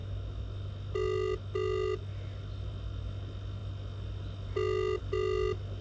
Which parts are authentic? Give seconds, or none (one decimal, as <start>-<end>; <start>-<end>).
0.0-5.8